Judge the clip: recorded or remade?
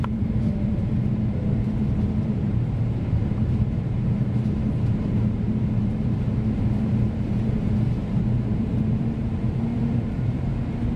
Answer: remade